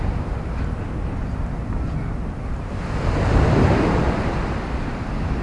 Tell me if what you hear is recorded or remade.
recorded